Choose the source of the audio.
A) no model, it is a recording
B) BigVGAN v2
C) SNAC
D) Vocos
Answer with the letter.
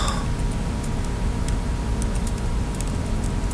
A